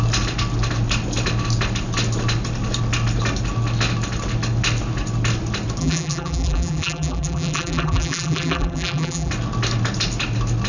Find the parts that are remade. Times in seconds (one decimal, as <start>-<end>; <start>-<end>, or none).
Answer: 5.8-9.3